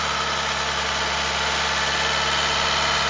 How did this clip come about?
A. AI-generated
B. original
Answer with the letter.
B